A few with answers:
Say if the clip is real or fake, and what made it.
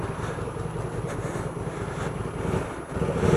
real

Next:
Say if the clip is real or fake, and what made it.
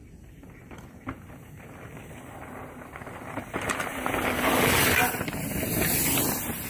real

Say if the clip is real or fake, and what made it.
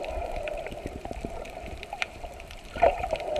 fake, vocoder, BigVGAN v2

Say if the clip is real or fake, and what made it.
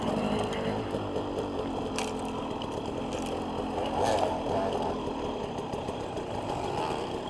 real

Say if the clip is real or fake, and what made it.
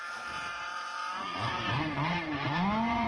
fake, vocoder, Vocos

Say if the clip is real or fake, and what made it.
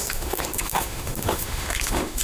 fake, autoencoder, DAC-VAE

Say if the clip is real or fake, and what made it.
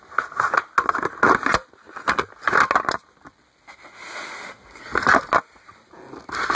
real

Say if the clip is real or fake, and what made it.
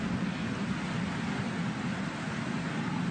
real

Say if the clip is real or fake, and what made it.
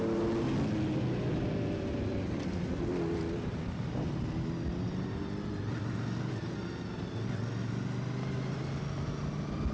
real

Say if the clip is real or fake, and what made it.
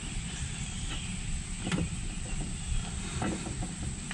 real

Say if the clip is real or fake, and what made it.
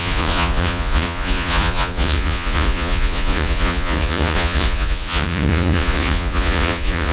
fake, vocoder, Vocos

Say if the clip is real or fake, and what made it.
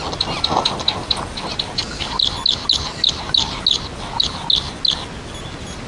real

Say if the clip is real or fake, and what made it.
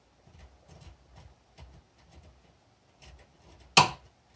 real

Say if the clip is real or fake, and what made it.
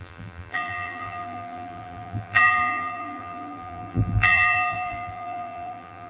fake, vocoder, BigVGAN v2